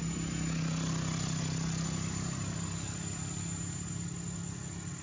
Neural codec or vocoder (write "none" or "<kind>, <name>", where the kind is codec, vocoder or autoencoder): none